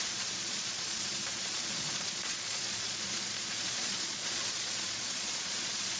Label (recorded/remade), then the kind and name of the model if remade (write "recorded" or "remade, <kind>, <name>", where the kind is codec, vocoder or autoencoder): remade, vocoder, Vocos